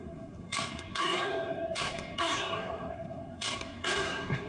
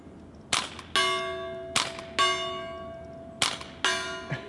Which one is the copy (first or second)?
first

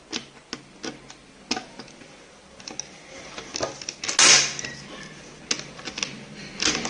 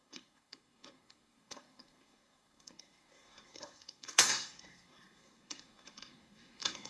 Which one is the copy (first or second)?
second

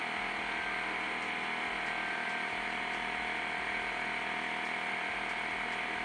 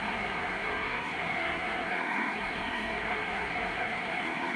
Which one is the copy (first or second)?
second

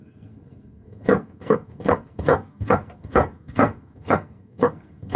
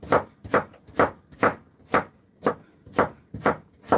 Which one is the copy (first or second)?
first